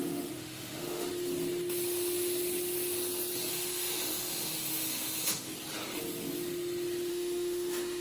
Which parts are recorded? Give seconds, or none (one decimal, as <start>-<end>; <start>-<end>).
1.1-3.5; 5.5-7.1